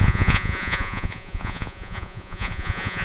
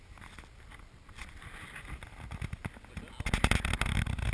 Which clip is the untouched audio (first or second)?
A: second